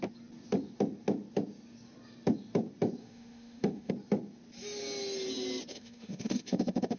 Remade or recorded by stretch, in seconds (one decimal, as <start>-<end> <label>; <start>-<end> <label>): 0.0-3.0 recorded; 3.0-3.9 remade; 3.9-5.7 recorded; 5.7-7.0 remade

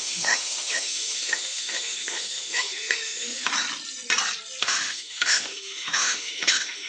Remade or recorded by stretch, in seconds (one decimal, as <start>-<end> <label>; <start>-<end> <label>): 0.0-3.5 remade; 3.5-4.6 recorded; 4.6-6.9 remade